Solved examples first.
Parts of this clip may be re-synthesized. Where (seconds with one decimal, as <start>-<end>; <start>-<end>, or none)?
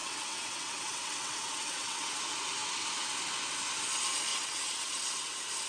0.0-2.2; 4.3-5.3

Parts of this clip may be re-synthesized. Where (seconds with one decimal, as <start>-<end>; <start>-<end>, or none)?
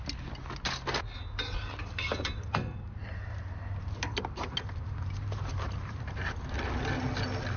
3.0-6.6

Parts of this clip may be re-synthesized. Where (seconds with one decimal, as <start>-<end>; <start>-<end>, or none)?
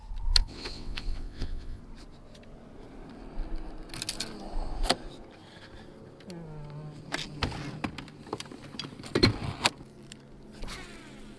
0.4-1.8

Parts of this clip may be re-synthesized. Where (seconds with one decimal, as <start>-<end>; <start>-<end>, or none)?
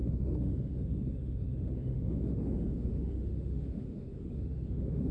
0.0-5.1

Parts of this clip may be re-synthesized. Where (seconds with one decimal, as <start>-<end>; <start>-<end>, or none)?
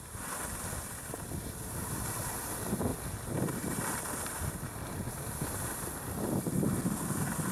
none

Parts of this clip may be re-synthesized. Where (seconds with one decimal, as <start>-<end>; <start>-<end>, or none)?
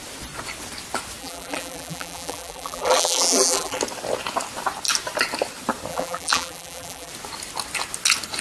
1.2-3.8; 5.9-7.1